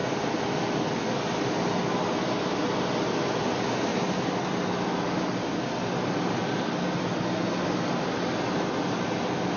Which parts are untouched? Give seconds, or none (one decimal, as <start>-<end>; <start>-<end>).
0.0-9.6